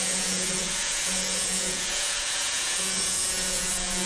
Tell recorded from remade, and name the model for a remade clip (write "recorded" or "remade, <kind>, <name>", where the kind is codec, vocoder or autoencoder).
remade, vocoder, Vocos